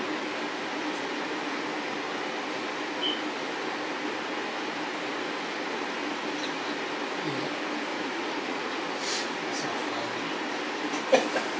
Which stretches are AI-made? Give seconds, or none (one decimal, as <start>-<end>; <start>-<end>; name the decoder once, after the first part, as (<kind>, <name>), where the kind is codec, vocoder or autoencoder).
7.9-9.4 (vocoder, Vocos)